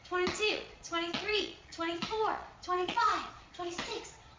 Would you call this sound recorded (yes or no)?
no